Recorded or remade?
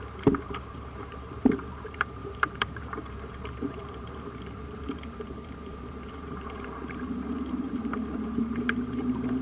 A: remade